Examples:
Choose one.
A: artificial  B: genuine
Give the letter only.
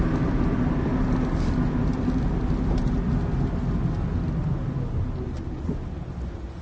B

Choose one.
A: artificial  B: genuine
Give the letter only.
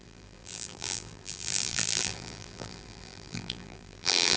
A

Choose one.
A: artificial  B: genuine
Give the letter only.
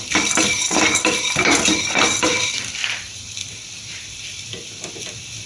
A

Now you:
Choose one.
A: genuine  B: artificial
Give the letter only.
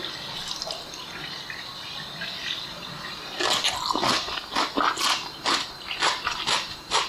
A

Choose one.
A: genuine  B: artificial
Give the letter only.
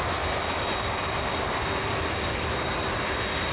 A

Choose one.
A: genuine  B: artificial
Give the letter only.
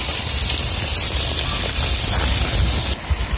A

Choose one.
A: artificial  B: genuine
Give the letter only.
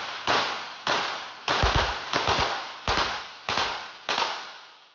B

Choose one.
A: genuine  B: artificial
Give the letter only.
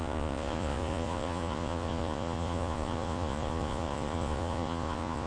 B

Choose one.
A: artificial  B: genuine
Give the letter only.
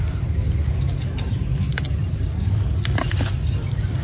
B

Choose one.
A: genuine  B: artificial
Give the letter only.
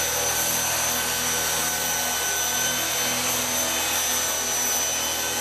A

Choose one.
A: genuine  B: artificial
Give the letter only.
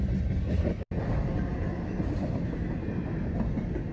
A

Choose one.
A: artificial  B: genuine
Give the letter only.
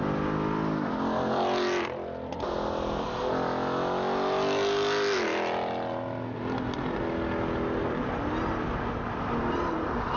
B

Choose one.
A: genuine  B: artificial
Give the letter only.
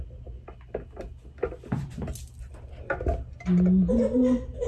A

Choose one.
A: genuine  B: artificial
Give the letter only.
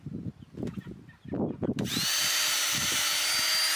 A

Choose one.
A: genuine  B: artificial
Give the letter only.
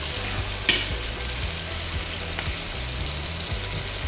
A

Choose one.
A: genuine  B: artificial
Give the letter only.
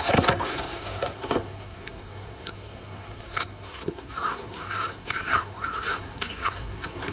B